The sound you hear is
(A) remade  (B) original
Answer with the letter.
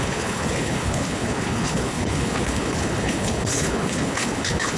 A